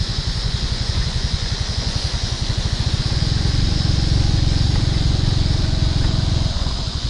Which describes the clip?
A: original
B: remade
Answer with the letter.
B